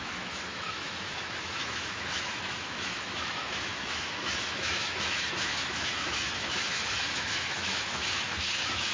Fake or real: fake